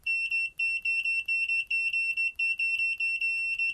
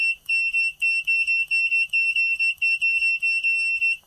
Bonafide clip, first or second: first